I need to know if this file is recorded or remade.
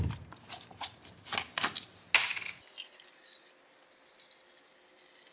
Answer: recorded